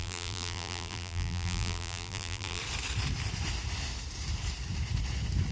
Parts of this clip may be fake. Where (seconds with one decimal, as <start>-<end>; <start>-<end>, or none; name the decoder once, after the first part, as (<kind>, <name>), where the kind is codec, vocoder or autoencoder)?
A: 0.0-2.6 (vocoder, BigVGAN v2)